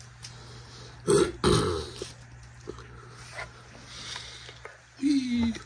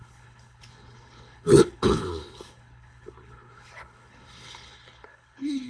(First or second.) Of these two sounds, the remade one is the second